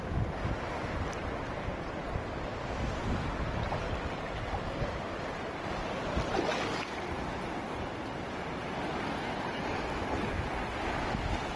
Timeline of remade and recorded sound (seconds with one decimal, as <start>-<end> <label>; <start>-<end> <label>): 0.0-11.6 recorded